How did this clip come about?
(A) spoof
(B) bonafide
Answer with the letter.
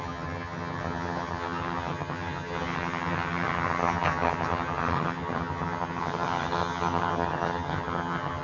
A